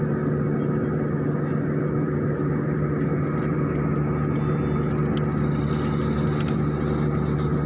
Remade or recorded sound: recorded